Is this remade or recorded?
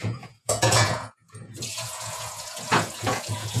remade